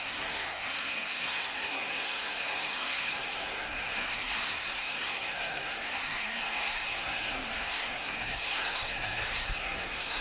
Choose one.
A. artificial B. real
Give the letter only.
A